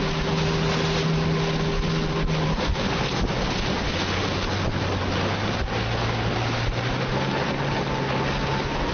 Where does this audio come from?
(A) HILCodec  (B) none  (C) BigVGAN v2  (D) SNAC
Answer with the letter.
B